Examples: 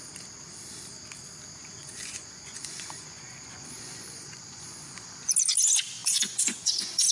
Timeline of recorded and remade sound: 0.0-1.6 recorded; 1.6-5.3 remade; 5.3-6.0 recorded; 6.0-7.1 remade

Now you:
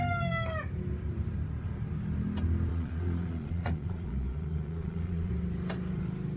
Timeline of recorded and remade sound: 0.0-2.7 recorded; 2.7-5.3 remade; 5.3-6.4 recorded

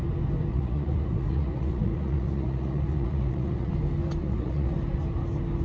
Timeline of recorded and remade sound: 0.0-0.5 recorded; 0.5-3.7 remade; 3.7-4.2 recorded; 4.2-4.7 remade; 4.7-5.6 recorded

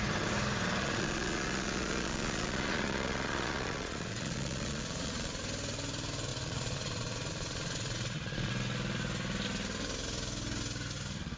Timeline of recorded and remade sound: 0.0-0.8 recorded; 0.8-5.4 remade; 5.4-6.3 recorded; 6.3-8.5 remade; 8.5-11.4 recorded

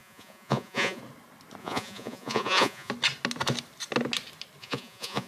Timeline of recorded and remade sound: 0.0-1.0 remade; 1.0-1.6 recorded; 1.6-2.9 remade; 2.9-4.6 recorded; 4.6-5.3 remade